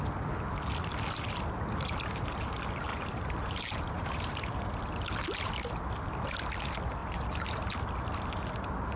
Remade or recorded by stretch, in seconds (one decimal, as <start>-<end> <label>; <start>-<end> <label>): 0.0-2.9 recorded; 2.9-4.6 remade; 4.6-7.0 recorded; 7.0-7.6 remade; 7.6-9.0 recorded